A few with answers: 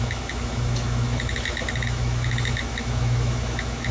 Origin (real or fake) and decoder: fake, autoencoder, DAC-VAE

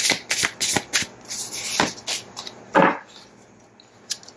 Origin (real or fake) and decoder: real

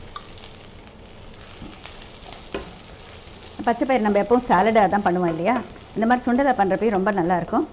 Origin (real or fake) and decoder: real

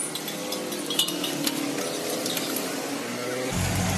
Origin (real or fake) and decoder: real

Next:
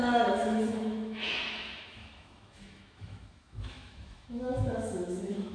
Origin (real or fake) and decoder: fake, autoencoder, DAC-VAE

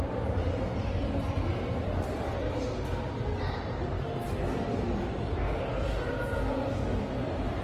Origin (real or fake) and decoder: real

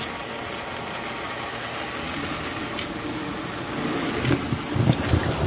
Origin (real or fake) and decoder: real